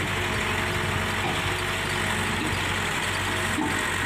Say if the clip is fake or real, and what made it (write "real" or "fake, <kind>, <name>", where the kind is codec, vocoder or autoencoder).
real